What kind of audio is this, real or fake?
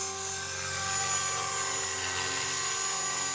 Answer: real